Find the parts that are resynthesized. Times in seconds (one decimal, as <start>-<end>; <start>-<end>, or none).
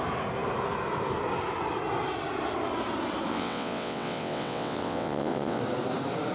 3.3-5.6